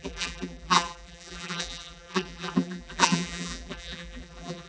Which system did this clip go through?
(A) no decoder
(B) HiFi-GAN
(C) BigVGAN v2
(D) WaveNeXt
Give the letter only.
C